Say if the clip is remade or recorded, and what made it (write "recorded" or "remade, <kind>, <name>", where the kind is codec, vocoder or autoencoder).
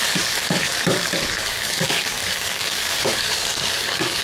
remade, codec, DAC